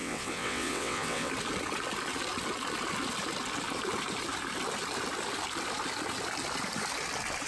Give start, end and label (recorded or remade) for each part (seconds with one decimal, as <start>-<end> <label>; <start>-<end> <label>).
0.0-1.3 remade; 1.3-7.5 recorded

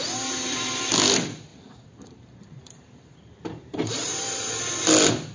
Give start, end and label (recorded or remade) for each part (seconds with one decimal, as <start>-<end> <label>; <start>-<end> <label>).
0.0-1.5 recorded; 1.5-4.6 remade; 4.6-5.3 recorded

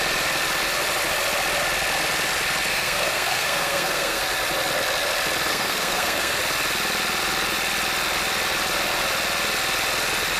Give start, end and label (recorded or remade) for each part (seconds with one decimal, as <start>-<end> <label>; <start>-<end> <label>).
0.0-2.7 recorded; 2.7-4.2 remade; 4.2-5.5 recorded; 5.5-6.4 remade; 6.4-10.4 recorded

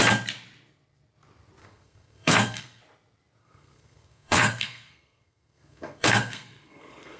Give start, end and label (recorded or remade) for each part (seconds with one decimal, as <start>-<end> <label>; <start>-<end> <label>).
0.0-1.6 recorded; 1.6-2.8 remade; 2.8-3.4 recorded; 3.4-7.2 remade

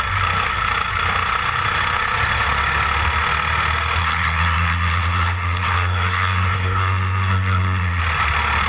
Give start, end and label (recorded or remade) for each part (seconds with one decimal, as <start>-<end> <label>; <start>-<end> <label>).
0.0-4.0 recorded; 4.0-8.0 remade; 8.0-8.7 recorded

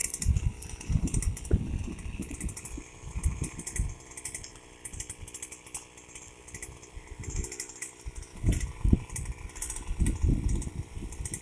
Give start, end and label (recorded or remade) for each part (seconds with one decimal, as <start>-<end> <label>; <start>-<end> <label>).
0.0-11.4 recorded